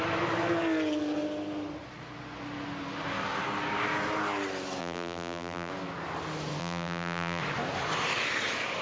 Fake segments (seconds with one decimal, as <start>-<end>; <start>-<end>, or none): 4.8-5.7; 6.6-7.4